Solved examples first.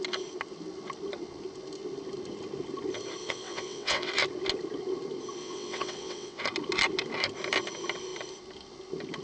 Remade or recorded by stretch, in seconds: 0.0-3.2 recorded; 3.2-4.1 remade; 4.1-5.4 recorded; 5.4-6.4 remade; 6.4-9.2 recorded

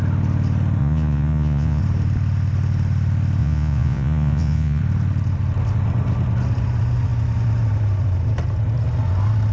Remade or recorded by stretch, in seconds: 0.0-0.8 recorded; 0.8-1.8 remade; 1.8-3.4 recorded; 3.4-4.8 remade; 4.8-9.5 recorded